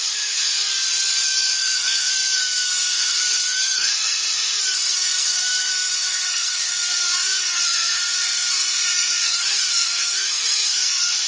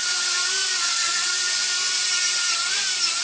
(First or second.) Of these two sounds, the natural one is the second